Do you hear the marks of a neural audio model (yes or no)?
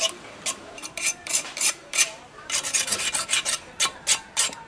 yes